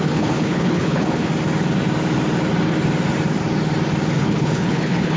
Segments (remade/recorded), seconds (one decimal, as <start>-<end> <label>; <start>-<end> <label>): 0.0-1.3 remade; 1.3-4.1 recorded; 4.1-5.2 remade